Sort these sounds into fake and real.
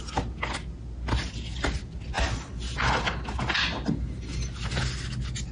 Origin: real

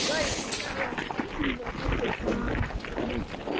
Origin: real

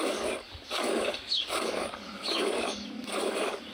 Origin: fake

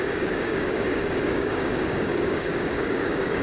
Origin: fake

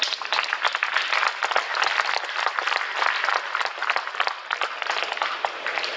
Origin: real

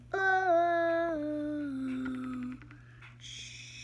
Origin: real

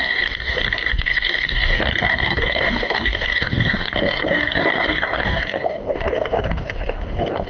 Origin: fake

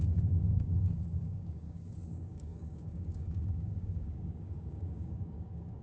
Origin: fake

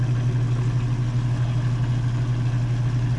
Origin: real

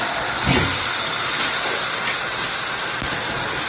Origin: real